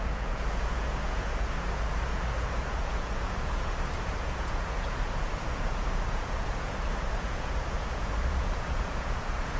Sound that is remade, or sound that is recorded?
remade